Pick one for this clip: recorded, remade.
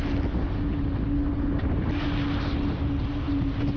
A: recorded